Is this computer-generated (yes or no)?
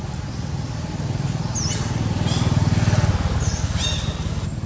no